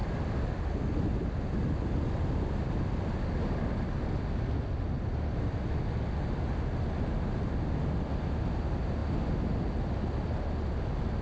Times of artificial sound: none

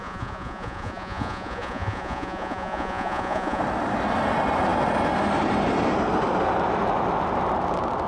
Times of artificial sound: 0.0-3.6 (vocoder, Vocos)

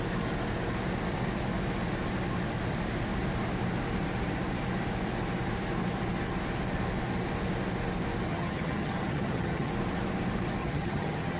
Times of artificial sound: 8.3-9.7 (vocoder, HiFi-GAN); 10.6-11.4

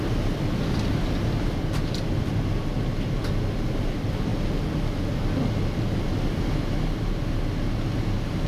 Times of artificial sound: none